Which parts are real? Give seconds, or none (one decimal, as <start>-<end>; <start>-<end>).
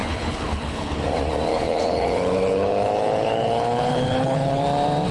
1.0-1.5; 4.6-5.1